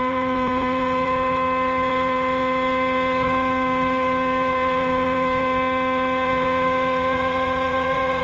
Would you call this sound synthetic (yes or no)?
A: yes